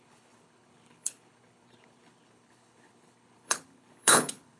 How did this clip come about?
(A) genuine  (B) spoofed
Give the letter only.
B